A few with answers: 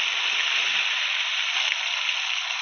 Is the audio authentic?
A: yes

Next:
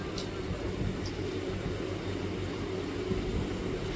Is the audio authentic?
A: yes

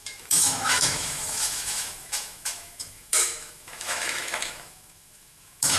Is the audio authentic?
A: no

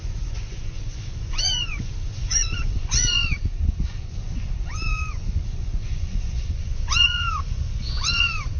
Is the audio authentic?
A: no